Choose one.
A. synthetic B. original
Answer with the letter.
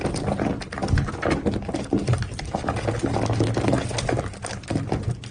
B